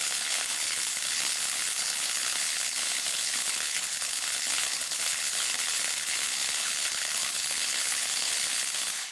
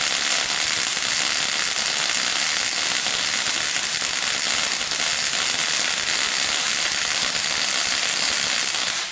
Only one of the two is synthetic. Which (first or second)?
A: first